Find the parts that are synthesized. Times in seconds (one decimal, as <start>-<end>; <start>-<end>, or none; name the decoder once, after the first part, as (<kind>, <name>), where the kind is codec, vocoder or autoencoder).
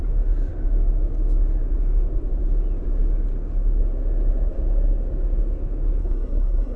6.0-6.8 (codec, SNAC)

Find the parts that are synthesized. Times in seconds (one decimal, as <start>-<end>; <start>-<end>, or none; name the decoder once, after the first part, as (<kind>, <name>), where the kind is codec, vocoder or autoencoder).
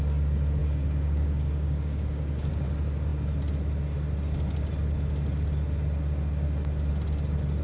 0.6-2.5 (codec, DAC)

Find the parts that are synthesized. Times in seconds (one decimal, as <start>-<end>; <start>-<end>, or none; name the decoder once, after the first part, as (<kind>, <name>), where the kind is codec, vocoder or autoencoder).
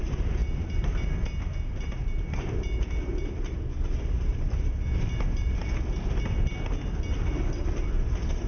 0.4-3.3 (vocoder, BigVGAN v2); 4.3-8.1